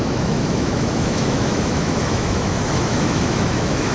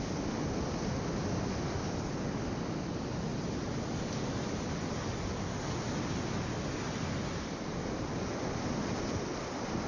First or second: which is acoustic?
second